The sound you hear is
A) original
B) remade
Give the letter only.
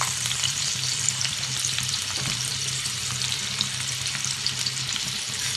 B